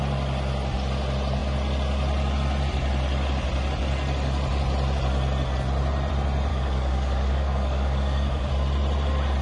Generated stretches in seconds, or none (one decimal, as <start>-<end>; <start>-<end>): 6.5-8.5